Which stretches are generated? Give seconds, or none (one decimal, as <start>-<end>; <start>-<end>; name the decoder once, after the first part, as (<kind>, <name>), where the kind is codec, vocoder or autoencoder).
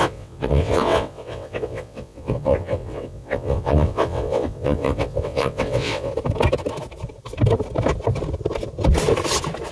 0.0-6.1 (vocoder, WaveNeXt)